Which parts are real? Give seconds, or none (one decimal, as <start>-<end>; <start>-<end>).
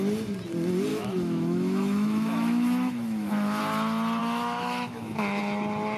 0.0-0.9; 3.6-4.2; 5.4-6.0